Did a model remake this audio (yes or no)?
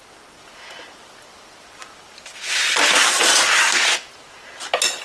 no